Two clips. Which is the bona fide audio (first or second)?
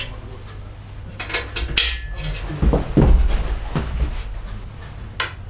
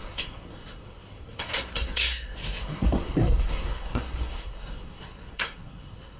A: first